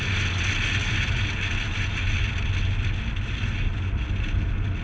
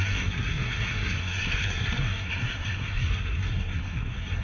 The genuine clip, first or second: first